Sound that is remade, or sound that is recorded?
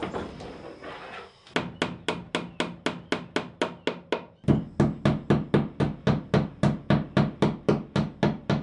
recorded